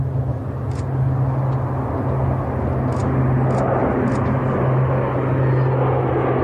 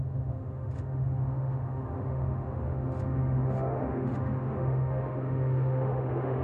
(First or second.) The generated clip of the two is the second